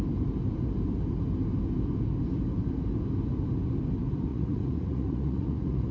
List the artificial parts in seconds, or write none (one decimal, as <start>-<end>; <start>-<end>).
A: 4.3-5.9